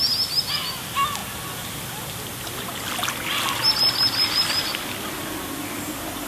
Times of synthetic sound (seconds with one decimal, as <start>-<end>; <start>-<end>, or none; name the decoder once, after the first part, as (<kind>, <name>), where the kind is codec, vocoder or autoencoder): none